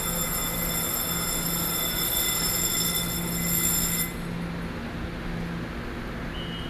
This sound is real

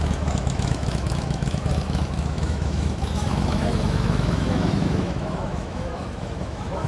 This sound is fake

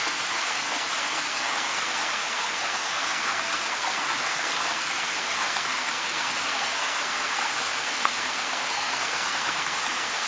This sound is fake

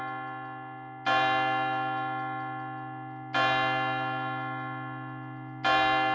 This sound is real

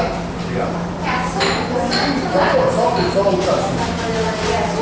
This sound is real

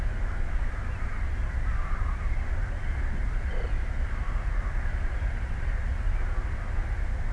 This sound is real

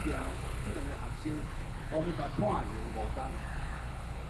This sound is fake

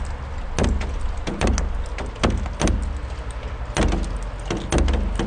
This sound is real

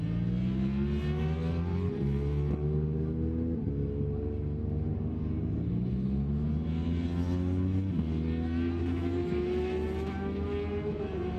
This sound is real